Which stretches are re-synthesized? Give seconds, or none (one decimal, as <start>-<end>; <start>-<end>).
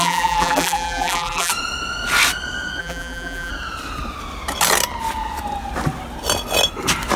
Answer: 0.0-1.5; 2.8-3.5